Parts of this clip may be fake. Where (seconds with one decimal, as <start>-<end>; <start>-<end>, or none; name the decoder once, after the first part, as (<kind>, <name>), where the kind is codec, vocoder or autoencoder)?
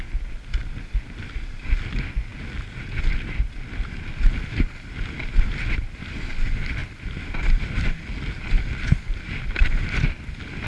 none